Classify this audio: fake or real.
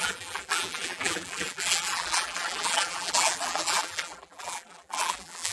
fake